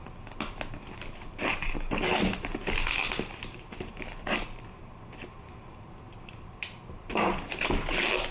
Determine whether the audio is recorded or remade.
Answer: recorded